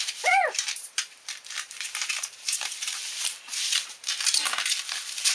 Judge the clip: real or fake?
fake